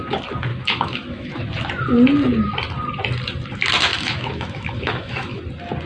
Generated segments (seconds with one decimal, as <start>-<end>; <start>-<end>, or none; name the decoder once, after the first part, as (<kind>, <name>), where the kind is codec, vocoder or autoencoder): 0.5-1.3 (autoencoder, DAC-VAE); 3.9-5.4